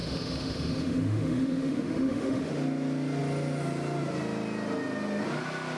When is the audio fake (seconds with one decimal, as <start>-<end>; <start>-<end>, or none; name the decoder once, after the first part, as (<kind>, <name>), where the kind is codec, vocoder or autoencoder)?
0.0-2.5 (autoencoder, DAC-VAE)